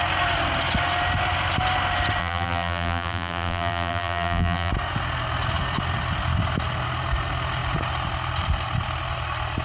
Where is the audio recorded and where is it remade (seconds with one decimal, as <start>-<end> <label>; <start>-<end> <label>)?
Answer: 0.0-2.2 recorded; 2.2-4.7 remade; 4.7-9.6 recorded